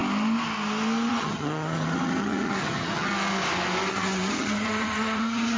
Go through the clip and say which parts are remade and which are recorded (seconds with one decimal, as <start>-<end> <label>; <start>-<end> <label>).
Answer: 0.0-1.1 recorded; 1.1-3.1 remade; 3.1-3.9 recorded; 3.9-5.6 remade